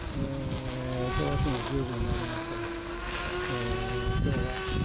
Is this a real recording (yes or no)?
yes